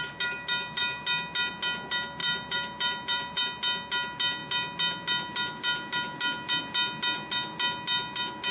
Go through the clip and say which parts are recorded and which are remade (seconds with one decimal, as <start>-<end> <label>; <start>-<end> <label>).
0.0-2.2 recorded; 2.2-3.4 remade; 3.4-8.5 recorded

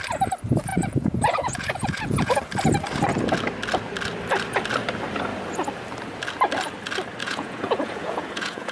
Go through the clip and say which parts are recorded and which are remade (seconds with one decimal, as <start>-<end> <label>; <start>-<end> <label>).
0.0-0.7 recorded; 0.7-2.4 remade; 2.4-7.2 recorded; 7.2-8.7 remade

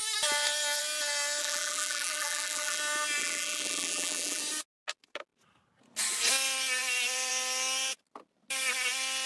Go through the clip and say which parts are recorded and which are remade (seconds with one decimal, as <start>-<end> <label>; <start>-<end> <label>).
0.0-1.4 recorded; 1.4-2.8 remade; 2.8-3.2 recorded; 3.2-4.4 remade; 4.4-9.3 recorded

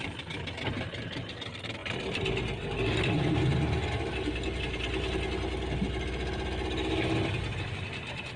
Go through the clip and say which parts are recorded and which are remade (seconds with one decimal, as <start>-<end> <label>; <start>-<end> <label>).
0.0-8.4 recorded